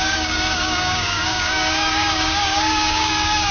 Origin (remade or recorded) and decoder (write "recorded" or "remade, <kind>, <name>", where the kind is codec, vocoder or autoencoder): remade, codec, DAC